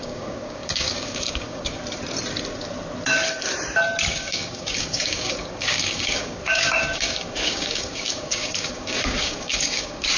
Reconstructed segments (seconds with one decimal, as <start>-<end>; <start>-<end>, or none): 0.0-1.8; 4.1-10.2